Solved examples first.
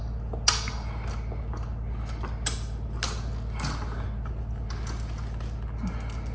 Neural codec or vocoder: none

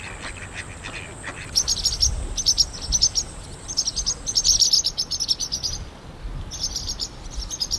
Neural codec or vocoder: none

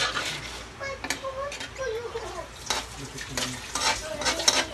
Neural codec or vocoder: none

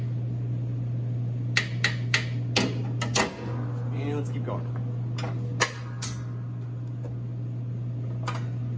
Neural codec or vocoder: none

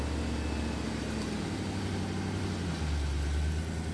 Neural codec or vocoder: none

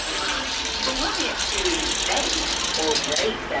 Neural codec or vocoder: none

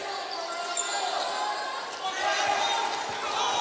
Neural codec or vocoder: none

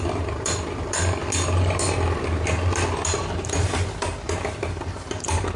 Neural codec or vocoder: none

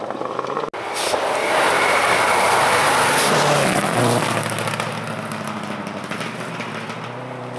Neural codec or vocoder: none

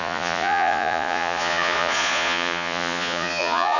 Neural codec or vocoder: vocoder, Vocos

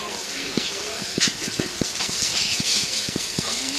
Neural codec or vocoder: codec, SNAC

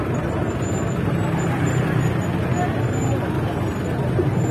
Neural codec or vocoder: none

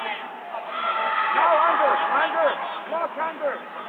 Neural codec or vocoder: none